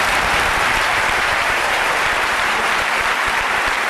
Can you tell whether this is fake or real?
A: fake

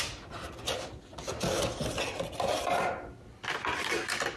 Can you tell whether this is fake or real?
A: real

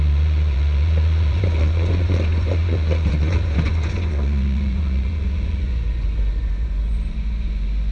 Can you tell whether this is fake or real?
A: fake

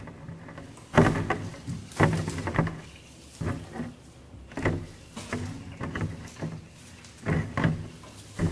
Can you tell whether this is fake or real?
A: real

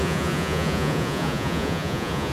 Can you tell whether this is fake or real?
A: fake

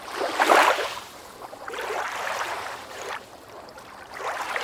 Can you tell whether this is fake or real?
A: fake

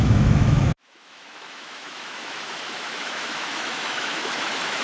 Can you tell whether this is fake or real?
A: fake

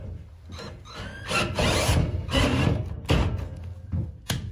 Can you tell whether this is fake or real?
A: real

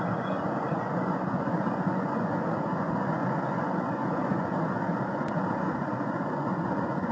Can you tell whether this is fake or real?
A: fake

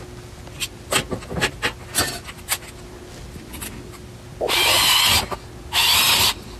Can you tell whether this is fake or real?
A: real